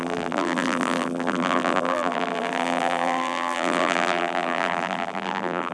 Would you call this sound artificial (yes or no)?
yes